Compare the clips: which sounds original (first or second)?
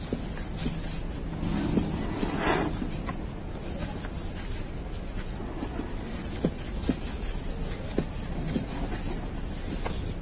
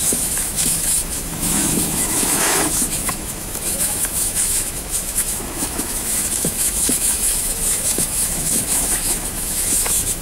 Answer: first